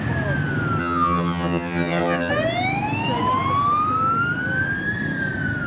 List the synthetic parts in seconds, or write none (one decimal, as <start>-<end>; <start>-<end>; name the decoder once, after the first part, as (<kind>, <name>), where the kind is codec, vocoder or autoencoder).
0.8-2.3 (vocoder, HiFi-GAN)